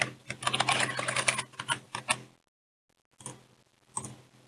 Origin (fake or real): real